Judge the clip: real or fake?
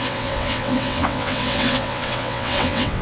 fake